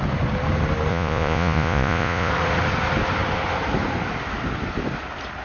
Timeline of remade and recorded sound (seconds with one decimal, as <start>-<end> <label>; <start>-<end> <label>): 0.0-0.9 recorded; 0.9-2.3 remade; 2.3-5.4 recorded